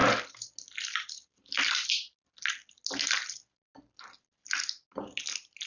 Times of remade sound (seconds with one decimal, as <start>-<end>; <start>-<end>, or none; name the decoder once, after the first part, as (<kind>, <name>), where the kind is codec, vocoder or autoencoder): none